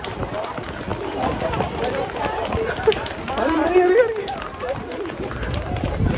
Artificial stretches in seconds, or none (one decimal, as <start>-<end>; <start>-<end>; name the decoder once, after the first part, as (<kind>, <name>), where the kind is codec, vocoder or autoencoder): 4.7-5.3 (vocoder, BigVGAN v2)